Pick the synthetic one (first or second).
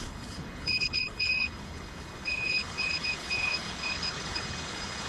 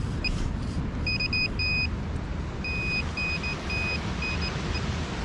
first